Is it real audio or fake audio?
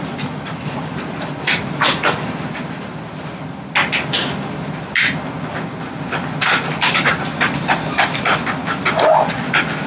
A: real